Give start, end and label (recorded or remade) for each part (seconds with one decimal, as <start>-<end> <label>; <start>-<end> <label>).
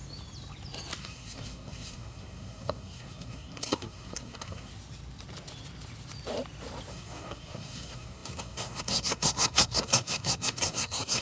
0.0-1.0 recorded; 1.0-4.7 remade; 4.7-6.9 recorded; 6.9-11.2 remade